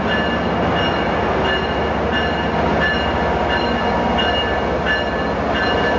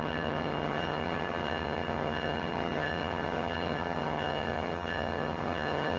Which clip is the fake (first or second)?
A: second